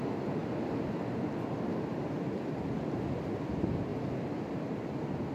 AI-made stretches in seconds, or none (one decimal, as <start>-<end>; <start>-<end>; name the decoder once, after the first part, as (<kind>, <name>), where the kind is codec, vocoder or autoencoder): none